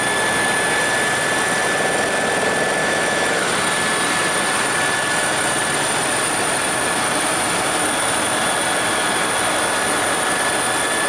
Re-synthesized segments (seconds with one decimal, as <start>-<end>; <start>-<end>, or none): 2.8-3.5